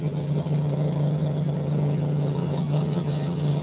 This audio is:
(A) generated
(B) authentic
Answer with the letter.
A